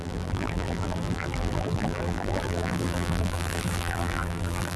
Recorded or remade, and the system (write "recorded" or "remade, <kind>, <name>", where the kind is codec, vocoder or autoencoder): remade, vocoder, BigVGAN v2